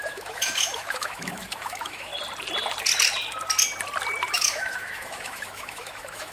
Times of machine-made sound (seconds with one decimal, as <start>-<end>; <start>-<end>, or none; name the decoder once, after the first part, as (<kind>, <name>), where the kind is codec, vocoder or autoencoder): 0.0-2.1 (autoencoder, DAC-VAE); 4.3-6.3